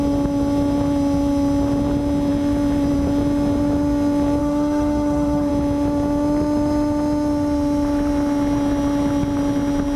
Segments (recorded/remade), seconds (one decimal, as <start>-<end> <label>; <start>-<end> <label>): 0.0-4.4 recorded; 4.4-5.5 remade; 5.5-10.0 recorded